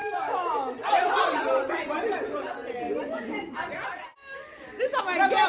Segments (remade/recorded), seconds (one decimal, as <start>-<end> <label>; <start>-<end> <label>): 0.0-1.1 remade; 1.1-5.5 recorded